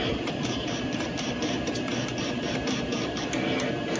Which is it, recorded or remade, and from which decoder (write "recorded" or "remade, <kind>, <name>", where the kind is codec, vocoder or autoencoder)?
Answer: remade, vocoder, BigVGAN v2